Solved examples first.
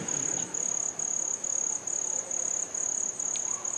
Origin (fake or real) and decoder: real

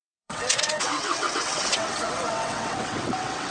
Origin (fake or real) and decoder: fake, vocoder, WaveNeXt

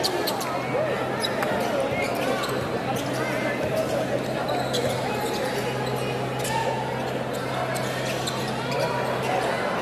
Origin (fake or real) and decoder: real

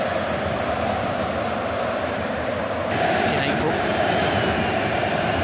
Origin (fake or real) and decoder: real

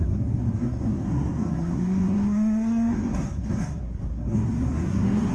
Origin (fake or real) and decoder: fake, codec, SNAC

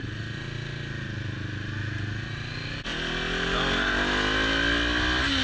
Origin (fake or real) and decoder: real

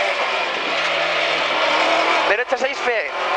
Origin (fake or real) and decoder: fake, vocoder, BigVGAN v2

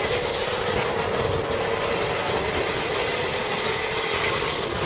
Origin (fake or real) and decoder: real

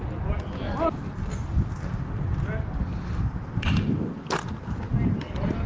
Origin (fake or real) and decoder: real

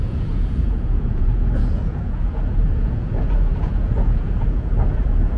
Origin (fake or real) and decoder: fake, vocoder, Vocos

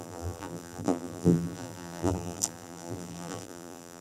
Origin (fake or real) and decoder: fake, vocoder, BigVGAN v2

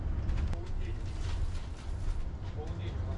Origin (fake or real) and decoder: real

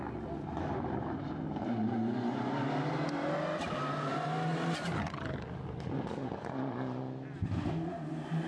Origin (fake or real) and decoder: real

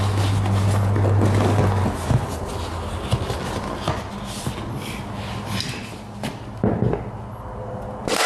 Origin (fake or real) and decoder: real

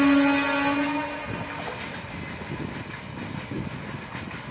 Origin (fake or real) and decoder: real